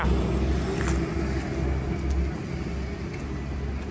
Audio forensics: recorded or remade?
recorded